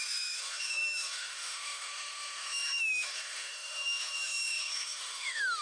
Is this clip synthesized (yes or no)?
yes